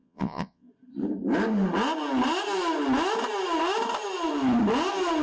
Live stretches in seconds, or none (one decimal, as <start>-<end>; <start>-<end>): 0.7-5.2